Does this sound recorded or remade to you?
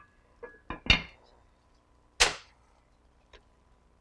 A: recorded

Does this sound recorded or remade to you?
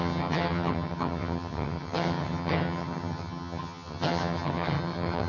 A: remade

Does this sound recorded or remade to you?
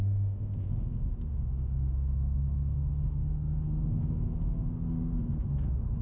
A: remade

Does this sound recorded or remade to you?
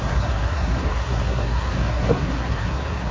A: remade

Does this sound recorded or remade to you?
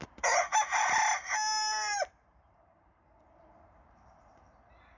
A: remade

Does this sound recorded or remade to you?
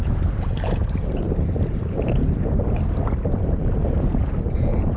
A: remade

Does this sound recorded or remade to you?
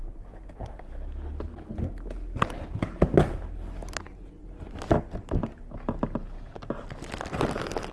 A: recorded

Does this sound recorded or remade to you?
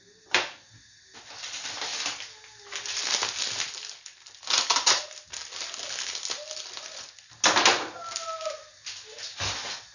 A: recorded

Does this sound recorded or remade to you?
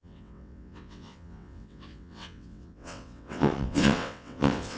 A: remade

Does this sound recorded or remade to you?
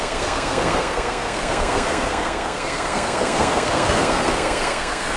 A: remade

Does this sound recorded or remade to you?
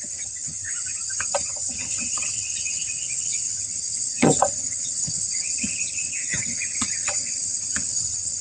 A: remade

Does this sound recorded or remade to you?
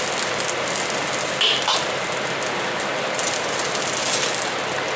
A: recorded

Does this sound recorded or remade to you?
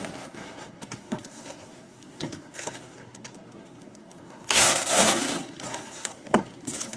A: remade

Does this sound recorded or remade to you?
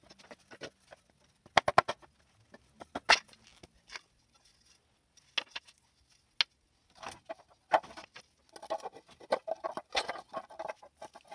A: recorded